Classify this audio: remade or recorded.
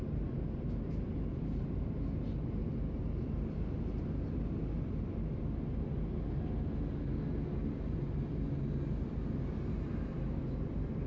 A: recorded